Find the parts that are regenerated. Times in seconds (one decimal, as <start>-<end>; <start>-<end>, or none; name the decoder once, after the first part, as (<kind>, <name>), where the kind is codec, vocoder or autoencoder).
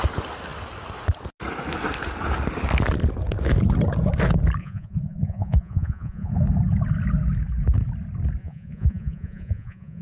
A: 4.6-6.3 (vocoder, Vocos); 8.4-10.0